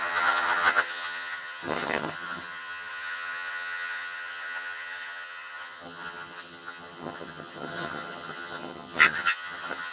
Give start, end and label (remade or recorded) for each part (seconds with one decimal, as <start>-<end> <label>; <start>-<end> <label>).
0.0-9.9 remade